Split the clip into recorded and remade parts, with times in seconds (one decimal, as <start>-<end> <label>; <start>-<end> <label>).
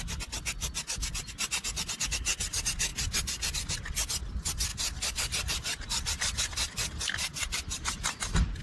0.0-2.9 recorded; 2.9-3.7 remade; 3.7-4.7 recorded; 4.7-7.6 remade; 7.6-8.6 recorded